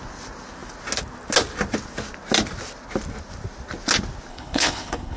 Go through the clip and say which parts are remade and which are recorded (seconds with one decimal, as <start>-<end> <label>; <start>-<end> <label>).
0.0-4.3 recorded; 4.3-5.2 remade